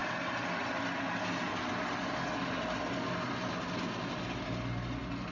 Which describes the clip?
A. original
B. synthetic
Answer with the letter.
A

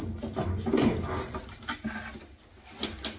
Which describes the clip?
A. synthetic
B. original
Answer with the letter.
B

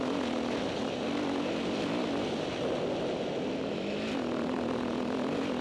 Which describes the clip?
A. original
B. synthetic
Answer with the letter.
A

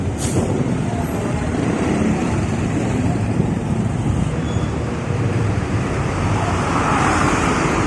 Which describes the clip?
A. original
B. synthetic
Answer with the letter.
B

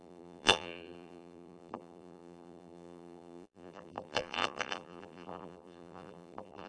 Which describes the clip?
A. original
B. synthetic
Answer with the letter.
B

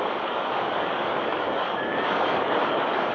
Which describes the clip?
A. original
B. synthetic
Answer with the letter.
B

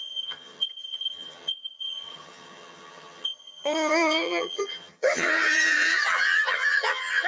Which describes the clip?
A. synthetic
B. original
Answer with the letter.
A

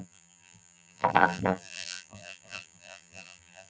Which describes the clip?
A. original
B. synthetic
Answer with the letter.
B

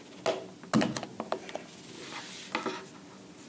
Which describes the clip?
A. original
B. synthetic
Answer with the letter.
A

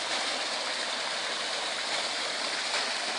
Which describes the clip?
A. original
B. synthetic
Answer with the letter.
A